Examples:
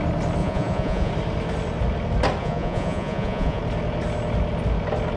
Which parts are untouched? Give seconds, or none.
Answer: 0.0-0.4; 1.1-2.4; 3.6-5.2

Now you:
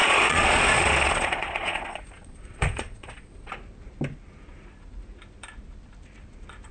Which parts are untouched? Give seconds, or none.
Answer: 3.5-6.7

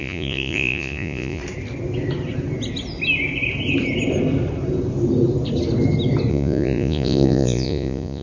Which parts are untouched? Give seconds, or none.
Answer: 1.4-6.3

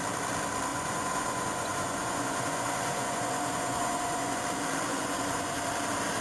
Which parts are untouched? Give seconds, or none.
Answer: 0.0-0.7; 4.4-4.9; 5.6-6.2

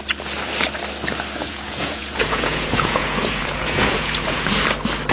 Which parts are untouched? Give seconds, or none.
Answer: 0.0-1.4; 4.5-5.1

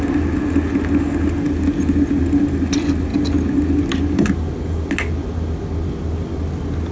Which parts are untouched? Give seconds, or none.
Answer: 0.0-6.9